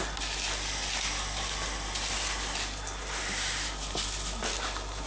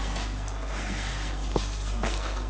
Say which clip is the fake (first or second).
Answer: second